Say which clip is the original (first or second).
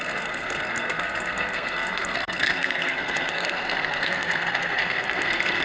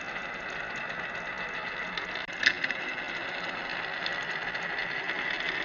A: second